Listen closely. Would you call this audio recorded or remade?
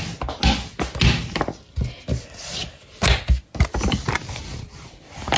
recorded